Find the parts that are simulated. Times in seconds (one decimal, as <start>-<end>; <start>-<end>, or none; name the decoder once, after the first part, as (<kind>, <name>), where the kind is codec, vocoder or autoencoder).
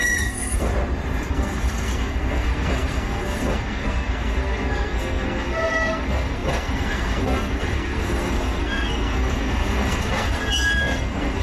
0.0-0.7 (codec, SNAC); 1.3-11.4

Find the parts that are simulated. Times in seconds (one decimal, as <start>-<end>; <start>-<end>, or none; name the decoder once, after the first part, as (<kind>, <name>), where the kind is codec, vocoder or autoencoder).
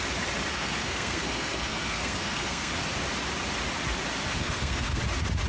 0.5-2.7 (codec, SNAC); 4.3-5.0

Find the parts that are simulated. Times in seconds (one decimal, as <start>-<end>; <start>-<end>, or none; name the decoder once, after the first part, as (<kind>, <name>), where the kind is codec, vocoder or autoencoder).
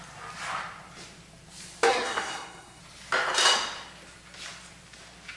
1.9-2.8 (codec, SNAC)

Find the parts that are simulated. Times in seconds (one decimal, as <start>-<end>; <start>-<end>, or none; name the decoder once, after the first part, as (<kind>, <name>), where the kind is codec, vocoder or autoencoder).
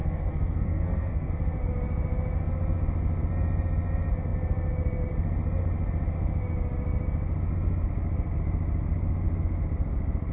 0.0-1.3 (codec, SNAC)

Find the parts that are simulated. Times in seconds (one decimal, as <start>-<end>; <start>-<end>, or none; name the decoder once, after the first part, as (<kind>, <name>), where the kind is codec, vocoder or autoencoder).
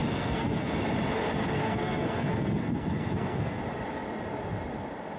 0.0-0.7 (codec, SNAC); 1.6-3.6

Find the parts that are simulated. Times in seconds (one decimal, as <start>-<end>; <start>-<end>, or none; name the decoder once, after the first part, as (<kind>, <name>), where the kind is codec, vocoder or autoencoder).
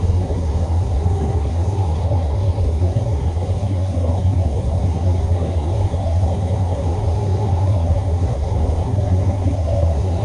0.0-10.2 (codec, SNAC)